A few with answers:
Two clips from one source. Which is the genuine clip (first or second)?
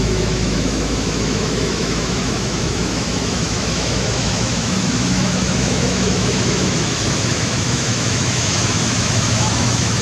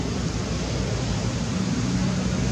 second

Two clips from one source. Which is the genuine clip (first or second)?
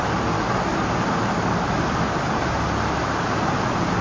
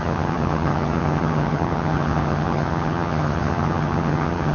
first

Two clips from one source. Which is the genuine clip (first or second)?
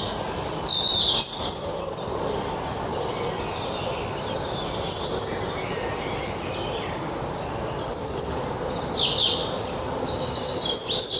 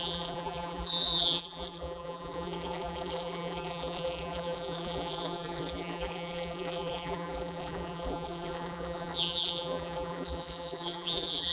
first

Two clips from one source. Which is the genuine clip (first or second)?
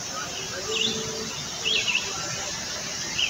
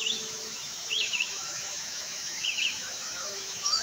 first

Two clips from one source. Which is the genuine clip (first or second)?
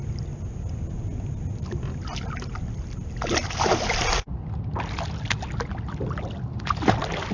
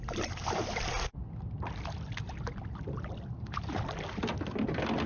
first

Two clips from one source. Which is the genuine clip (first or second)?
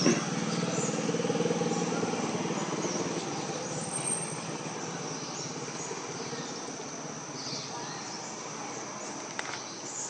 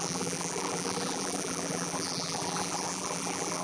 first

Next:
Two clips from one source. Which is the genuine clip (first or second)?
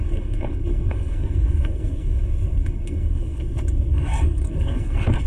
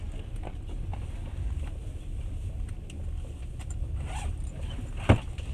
second